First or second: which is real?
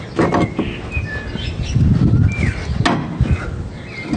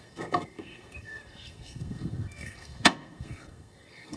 first